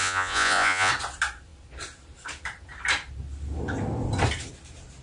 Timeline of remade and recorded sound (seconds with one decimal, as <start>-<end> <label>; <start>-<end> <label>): 0.0-0.9 remade; 0.9-5.0 recorded